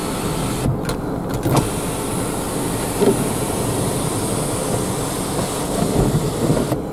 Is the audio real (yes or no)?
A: yes